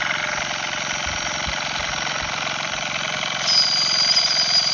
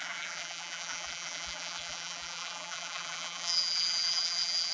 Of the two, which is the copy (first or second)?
second